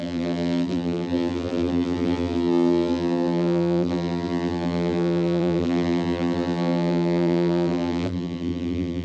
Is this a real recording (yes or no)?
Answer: no